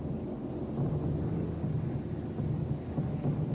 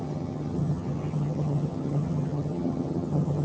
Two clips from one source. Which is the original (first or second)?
first